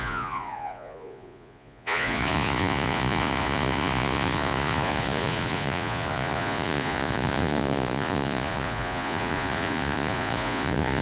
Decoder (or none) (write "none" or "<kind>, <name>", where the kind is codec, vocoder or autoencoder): vocoder, Vocos